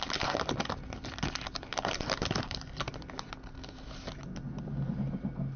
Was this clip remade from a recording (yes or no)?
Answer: no